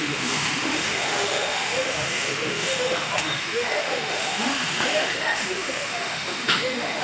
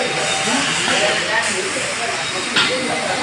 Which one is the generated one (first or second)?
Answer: first